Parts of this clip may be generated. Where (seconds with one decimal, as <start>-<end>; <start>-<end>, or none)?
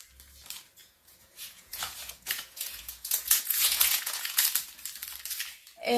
0.8-4.4